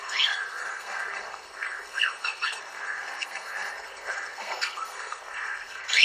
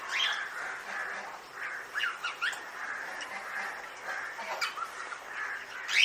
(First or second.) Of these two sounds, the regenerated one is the first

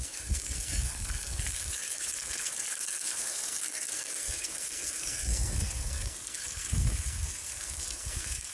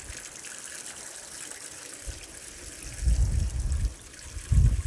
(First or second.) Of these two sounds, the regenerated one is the first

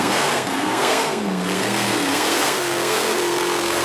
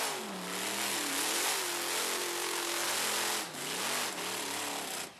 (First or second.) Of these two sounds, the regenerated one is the first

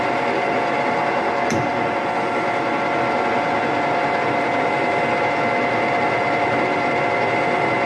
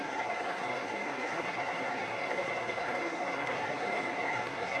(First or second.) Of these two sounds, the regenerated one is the second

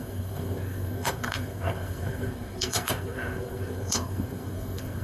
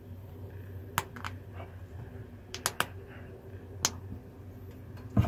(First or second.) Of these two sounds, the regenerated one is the first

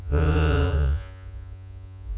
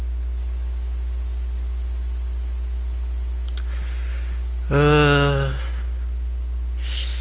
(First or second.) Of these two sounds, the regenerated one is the first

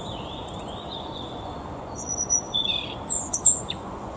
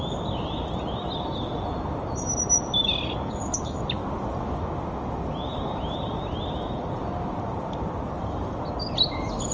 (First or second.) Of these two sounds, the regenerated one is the first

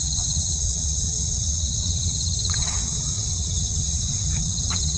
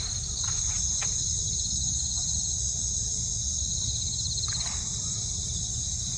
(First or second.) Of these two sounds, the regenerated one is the first